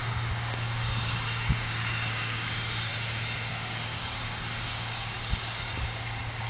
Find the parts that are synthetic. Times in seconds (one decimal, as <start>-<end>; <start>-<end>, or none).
0.0-2.9; 3.5-6.5